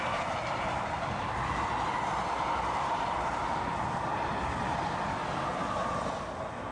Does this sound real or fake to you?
real